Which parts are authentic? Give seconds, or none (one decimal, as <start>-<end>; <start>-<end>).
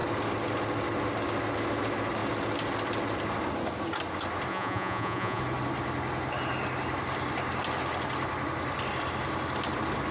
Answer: 0.0-4.5; 5.4-10.1